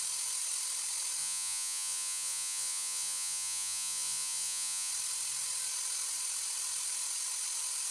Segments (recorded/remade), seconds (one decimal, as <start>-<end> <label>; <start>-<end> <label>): 0.0-1.2 recorded; 1.2-4.9 remade; 4.9-7.9 recorded